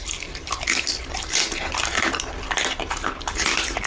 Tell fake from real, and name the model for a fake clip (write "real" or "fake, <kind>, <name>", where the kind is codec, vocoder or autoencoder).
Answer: real